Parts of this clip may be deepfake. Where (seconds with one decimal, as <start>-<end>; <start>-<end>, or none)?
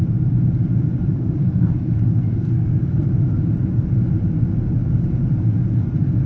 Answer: 1.1-3.1